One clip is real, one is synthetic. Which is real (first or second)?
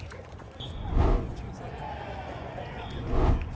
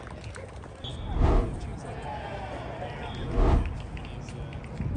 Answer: second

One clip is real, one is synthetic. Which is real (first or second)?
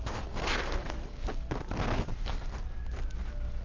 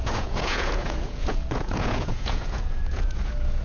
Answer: first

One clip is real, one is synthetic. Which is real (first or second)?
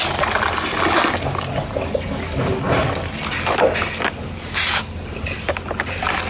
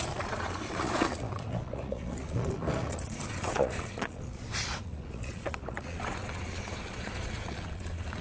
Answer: first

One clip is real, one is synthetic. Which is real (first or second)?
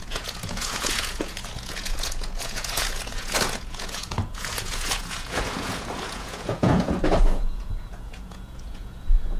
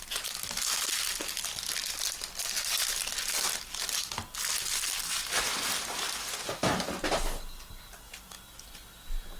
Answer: second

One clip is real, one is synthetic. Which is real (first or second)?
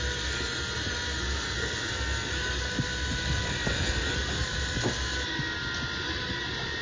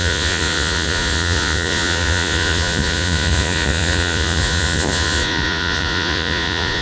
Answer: first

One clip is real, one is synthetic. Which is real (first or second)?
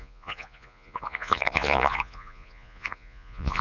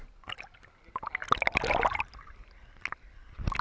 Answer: second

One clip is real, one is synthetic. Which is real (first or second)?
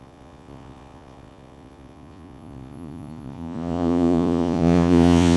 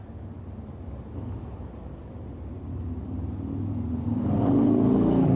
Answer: second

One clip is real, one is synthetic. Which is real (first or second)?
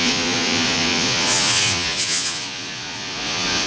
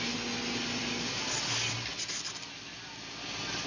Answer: second